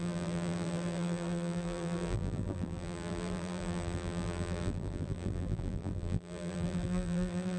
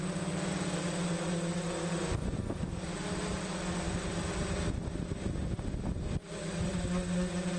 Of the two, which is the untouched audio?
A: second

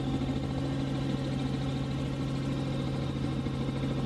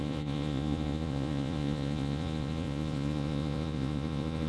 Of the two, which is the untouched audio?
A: first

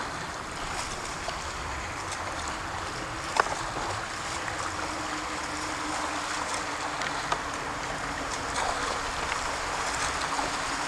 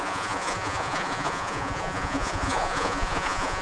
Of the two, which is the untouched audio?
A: first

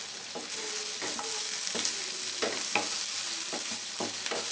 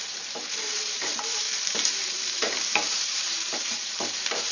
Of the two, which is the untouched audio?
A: first